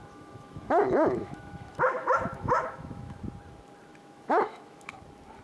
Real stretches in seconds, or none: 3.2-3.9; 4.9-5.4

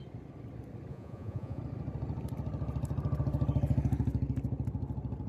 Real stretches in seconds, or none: 0.0-0.9; 1.6-5.3

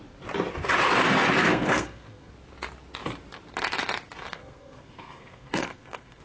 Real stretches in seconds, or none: 0.0-1.4; 2.3-4.3